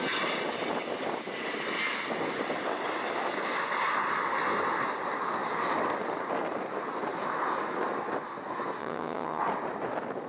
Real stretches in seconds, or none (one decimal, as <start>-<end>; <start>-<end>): 0.0-8.8; 9.4-10.3